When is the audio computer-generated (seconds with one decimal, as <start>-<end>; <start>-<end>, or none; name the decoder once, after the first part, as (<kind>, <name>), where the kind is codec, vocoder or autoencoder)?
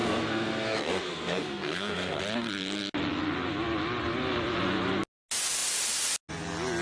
0.0-2.2 (codec, SNAC)